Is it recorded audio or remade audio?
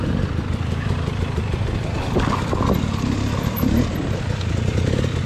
recorded